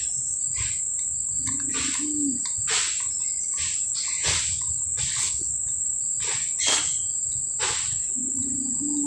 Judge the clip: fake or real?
real